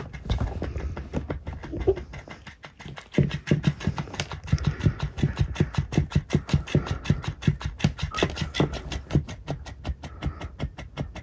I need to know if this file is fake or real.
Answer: real